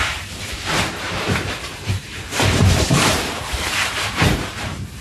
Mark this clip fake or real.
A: fake